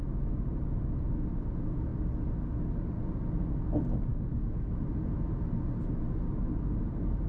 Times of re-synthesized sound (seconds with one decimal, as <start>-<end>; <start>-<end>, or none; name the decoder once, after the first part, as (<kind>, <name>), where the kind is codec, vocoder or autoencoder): 4.1-4.7 (codec, DAC)